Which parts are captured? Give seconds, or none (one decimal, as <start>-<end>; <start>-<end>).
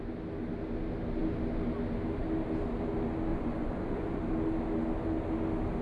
0.0-3.3; 4.2-5.8